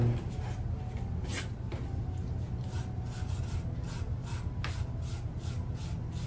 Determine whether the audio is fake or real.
real